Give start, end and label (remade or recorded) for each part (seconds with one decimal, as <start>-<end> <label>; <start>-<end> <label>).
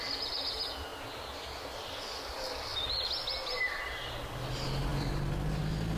0.0-6.0 recorded